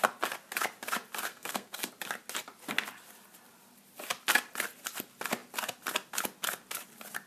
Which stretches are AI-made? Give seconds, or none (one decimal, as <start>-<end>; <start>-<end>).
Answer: 1.3-1.9